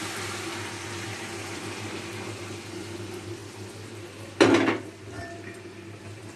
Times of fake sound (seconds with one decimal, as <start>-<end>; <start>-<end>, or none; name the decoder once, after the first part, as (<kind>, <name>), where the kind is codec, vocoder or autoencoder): none